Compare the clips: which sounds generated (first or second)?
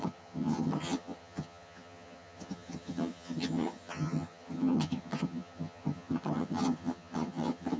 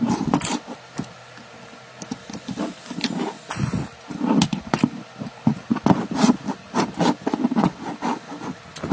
first